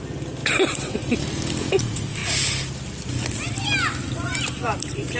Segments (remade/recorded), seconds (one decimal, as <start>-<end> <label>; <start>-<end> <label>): 0.0-5.2 recorded